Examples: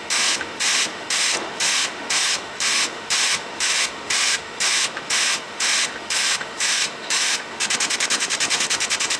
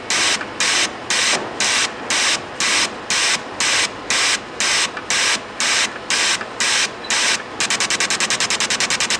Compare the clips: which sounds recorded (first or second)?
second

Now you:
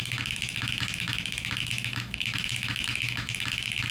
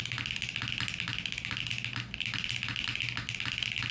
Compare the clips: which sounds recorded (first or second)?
second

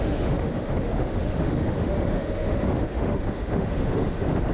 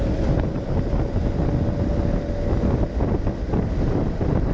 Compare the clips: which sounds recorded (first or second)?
second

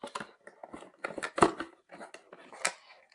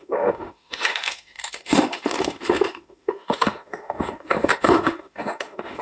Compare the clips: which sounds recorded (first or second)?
first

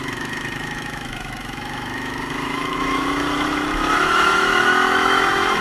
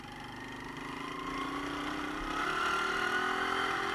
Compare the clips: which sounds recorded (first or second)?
second